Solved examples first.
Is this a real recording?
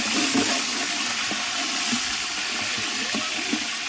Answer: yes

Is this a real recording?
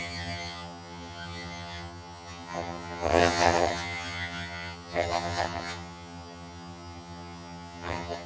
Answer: no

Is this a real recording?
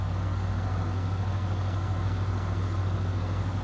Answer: no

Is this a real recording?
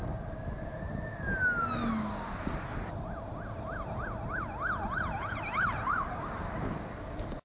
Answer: yes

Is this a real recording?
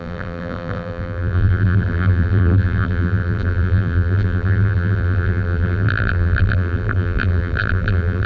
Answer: no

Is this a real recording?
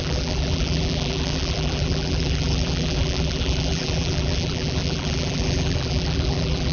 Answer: no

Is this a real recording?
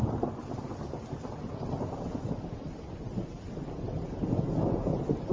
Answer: yes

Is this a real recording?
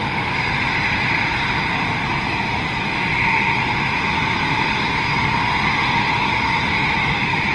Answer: yes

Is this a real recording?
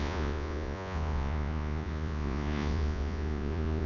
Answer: no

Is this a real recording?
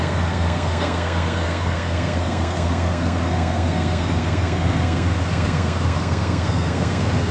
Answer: no